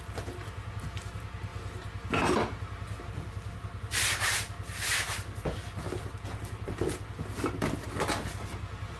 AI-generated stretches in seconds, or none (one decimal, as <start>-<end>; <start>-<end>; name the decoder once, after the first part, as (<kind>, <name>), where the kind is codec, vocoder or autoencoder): none